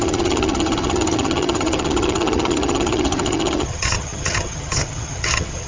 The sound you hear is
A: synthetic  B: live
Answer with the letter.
A